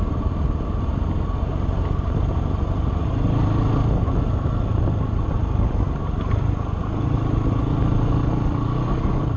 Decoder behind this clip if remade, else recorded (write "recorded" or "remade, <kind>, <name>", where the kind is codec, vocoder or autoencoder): recorded